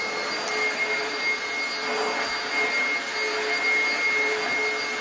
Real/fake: real